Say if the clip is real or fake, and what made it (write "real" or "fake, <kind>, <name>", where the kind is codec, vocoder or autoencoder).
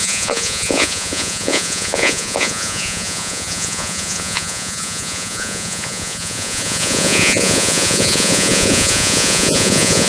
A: fake, vocoder, Vocos